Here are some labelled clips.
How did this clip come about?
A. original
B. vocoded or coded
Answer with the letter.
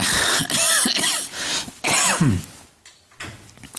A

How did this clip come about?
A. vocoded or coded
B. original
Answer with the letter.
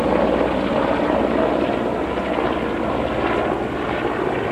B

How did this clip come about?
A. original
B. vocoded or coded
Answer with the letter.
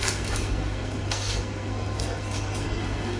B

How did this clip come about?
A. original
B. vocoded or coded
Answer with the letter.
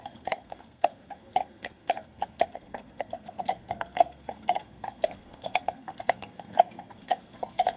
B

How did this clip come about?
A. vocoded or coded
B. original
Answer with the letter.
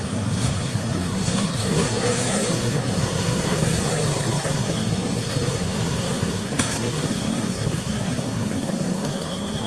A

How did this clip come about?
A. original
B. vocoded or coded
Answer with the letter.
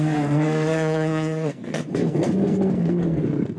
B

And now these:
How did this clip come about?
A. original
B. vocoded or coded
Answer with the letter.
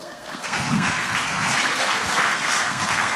B